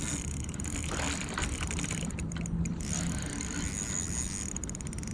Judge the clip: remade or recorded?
recorded